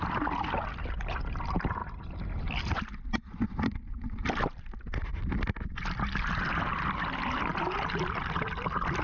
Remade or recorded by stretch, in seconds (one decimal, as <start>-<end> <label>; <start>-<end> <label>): 0.0-9.0 recorded